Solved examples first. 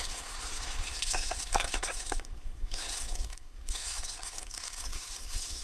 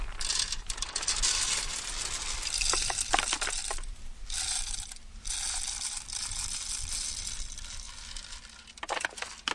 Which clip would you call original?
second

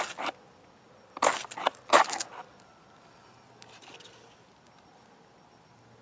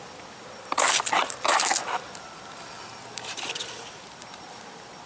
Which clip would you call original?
first